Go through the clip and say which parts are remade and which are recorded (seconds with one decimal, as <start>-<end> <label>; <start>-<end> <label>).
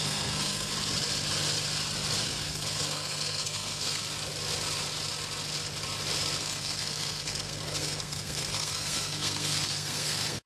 0.0-0.7 remade; 0.7-2.2 recorded; 2.2-4.0 remade; 4.0-6.4 recorded; 6.4-10.5 remade